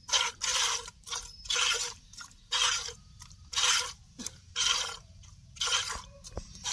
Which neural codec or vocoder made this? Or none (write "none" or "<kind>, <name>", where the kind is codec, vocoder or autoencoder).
vocoder, BigVGAN v2